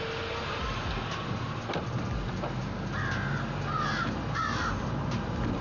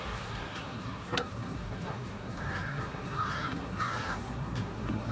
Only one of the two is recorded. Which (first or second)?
first